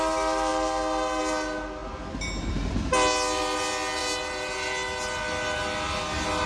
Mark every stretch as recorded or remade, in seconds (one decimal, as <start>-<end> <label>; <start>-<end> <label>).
0.0-4.0 recorded; 4.0-4.7 remade; 4.7-6.5 recorded